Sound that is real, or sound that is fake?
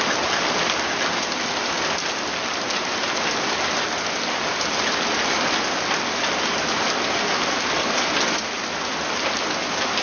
real